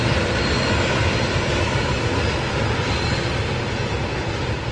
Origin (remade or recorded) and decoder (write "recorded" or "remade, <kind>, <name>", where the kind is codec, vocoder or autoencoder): recorded